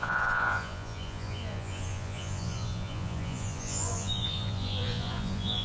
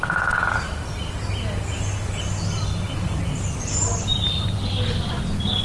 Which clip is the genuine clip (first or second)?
second